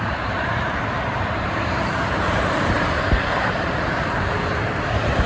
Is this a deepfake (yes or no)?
yes